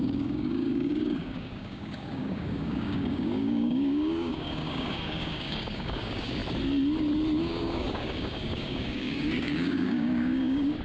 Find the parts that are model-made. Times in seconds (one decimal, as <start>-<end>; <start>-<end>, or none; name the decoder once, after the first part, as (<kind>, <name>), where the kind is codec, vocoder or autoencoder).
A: 0.0-6.4 (codec, DAC); 7.4-10.8